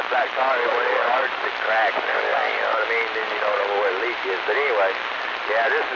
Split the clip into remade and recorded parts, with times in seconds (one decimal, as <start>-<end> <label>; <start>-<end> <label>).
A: 0.0-6.0 recorded